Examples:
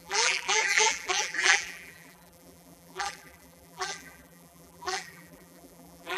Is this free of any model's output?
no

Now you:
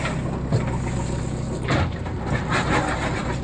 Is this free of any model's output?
yes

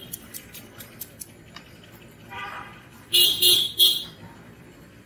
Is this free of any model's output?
no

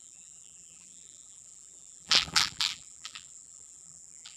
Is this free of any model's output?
no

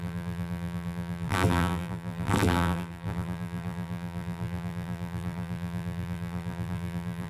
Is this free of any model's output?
no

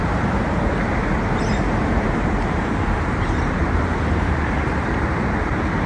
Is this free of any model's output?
no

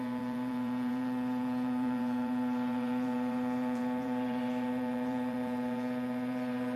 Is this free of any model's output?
no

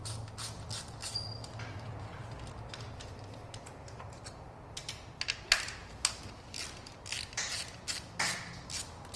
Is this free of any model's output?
yes